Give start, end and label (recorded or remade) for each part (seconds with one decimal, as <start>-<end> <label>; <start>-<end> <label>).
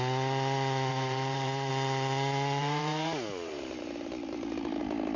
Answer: 0.0-0.9 recorded; 0.9-1.7 remade; 1.7-2.6 recorded; 2.6-4.8 remade; 4.8-5.2 recorded